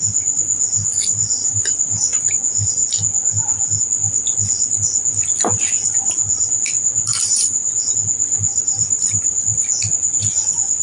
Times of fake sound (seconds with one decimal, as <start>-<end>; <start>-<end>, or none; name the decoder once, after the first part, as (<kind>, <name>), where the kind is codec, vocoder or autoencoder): 1.4-2.3 (vocoder, BigVGAN v2); 7.1-7.7; 8.5-9.4

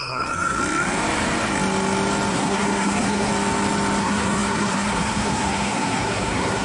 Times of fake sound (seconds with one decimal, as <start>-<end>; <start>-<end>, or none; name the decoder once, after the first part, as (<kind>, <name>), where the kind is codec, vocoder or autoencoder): 0.0-0.6 (codec, SNAC); 2.3-3.3; 4.0-6.6

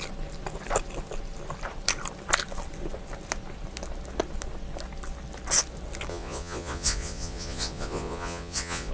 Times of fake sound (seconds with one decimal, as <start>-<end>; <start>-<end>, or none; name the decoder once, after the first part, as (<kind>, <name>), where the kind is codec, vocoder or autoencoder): 6.1-8.9 (vocoder, Vocos)

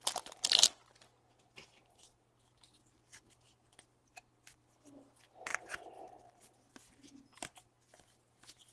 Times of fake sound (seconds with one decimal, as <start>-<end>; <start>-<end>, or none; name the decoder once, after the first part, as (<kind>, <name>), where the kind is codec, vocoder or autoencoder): none